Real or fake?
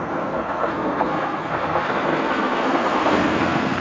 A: fake